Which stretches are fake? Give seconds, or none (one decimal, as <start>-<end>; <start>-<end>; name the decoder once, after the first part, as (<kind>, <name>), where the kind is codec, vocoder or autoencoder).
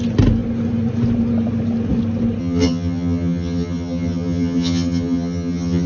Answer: 2.4-5.9 (vocoder, HiFi-GAN)